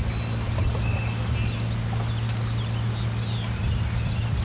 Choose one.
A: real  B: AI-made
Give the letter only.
A